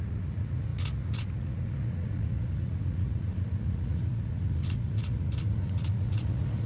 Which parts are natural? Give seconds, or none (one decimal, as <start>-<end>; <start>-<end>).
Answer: none